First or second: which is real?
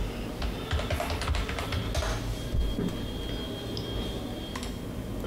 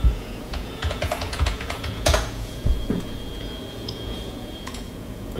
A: first